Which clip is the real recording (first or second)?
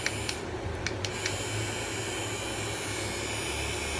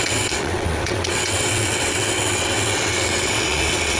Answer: first